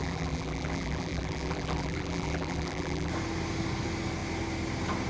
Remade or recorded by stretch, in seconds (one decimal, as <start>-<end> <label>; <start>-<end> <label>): 0.0-3.1 remade; 3.1-5.1 recorded